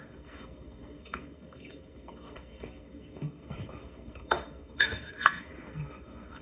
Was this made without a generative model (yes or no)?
no